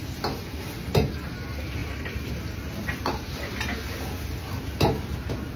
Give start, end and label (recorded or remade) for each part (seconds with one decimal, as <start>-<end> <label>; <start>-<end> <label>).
0.0-5.6 recorded